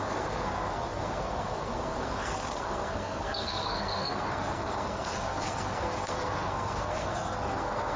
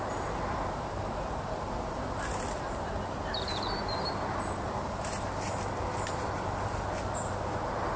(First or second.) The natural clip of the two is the second